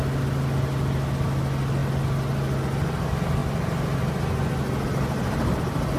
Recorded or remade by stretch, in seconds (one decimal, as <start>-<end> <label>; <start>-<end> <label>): 0.0-6.0 recorded